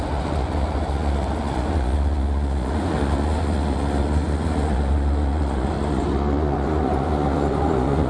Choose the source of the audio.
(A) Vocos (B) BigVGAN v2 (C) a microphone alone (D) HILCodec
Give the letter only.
A